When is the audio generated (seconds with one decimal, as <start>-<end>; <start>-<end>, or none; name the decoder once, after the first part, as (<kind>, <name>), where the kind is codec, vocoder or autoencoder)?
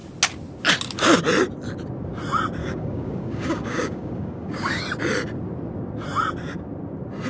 2.6-4.8 (codec, DAC)